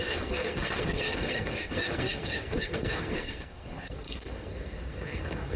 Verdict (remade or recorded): remade